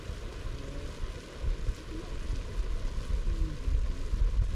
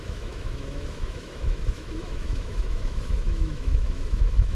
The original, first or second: first